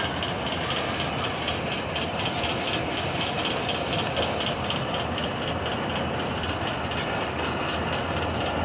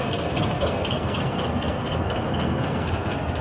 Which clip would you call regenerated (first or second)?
second